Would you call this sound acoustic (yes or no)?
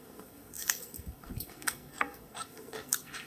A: no